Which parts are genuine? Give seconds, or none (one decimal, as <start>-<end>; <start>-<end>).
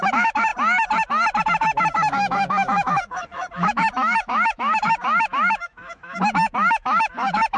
0.5-1.4